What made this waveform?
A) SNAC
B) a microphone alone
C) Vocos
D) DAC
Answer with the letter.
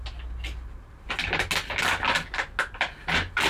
B